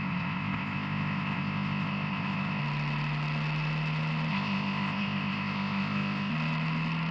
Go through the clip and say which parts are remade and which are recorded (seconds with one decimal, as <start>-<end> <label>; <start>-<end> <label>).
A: 0.0-2.6 remade; 2.6-4.3 recorded; 4.3-6.3 remade; 6.3-7.1 recorded